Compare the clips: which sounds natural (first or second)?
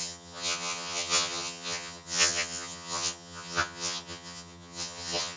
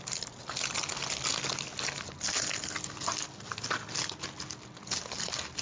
second